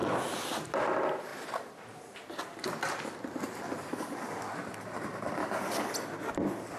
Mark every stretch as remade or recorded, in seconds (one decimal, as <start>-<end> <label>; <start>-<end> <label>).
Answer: 0.0-3.9 recorded; 3.9-4.5 remade; 4.5-5.4 recorded; 5.4-5.9 remade; 5.9-6.8 recorded